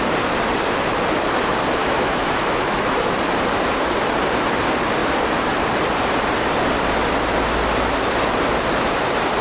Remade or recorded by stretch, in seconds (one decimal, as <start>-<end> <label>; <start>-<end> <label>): 0.0-1.8 recorded; 1.8-3.1 remade; 3.1-9.4 recorded